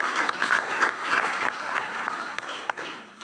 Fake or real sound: fake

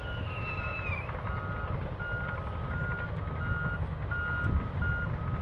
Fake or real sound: real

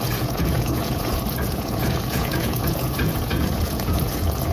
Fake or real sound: fake